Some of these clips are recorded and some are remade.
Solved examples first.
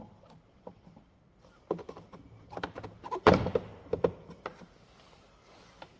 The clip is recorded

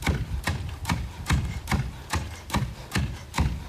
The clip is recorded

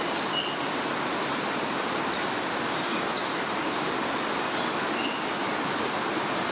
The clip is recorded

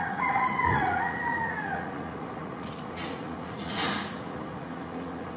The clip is remade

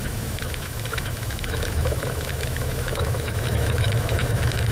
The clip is remade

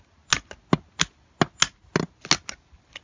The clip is recorded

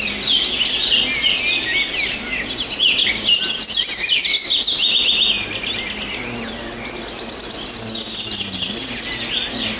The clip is recorded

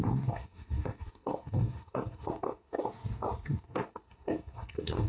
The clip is remade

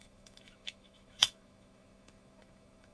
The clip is remade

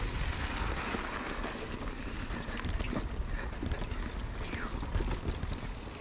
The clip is recorded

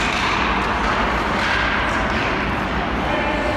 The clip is recorded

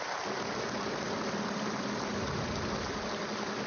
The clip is recorded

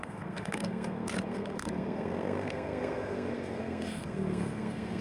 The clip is remade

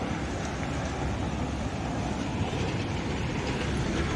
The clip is recorded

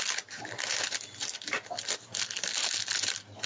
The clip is recorded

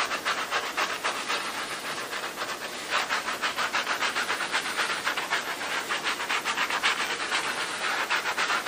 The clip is recorded